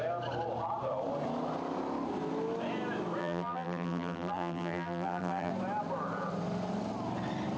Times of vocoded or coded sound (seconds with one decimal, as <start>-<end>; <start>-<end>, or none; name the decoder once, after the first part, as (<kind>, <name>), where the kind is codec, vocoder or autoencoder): 3.2-5.5 (vocoder, BigVGAN v2)